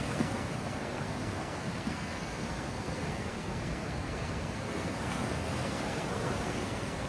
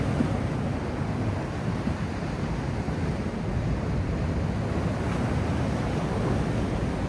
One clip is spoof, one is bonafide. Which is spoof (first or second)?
first